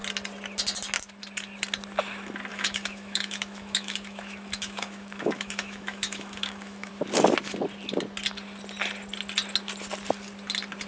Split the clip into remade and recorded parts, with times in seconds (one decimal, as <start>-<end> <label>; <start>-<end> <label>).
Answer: 0.0-2.5 recorded; 2.5-6.9 remade; 6.9-10.9 recorded